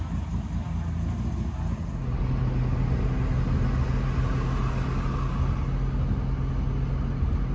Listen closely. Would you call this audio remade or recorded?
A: recorded